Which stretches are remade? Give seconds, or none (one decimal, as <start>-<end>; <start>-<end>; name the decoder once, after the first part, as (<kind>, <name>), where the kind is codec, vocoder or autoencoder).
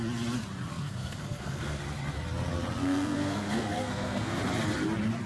0.7-1.8 (codec, SNAC); 2.8-4.4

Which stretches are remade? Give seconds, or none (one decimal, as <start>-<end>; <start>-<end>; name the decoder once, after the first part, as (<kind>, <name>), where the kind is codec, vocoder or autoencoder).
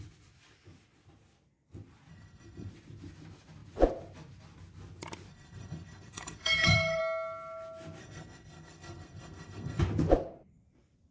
2.1-2.7 (codec, SNAC); 5.3-7.0; 8.0-9.8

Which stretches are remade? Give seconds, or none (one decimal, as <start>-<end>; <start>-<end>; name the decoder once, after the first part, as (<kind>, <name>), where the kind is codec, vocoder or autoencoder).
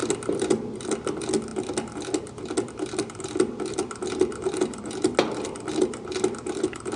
none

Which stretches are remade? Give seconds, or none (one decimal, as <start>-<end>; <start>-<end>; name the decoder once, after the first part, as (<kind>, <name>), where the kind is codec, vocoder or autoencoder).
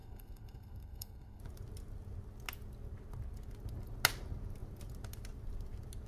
0.0-1.4 (codec, SNAC)